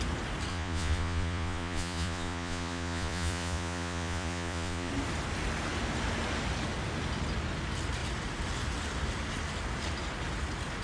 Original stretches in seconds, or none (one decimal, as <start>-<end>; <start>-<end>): 0.0-0.5; 4.9-10.8